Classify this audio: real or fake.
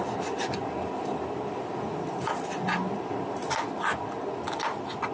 real